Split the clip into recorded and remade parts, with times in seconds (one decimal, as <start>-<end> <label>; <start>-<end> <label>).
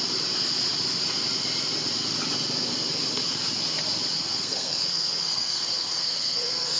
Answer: 0.0-4.2 recorded; 4.2-6.8 remade